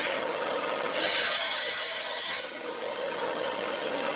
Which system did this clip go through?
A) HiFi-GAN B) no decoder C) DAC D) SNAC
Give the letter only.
A